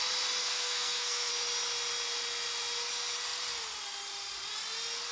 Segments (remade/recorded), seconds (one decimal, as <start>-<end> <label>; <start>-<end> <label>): 0.0-0.4 recorded; 0.4-1.3 remade; 1.3-5.1 recorded